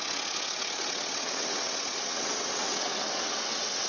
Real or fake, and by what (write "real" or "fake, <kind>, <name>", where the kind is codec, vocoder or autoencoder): fake, vocoder, WaveNeXt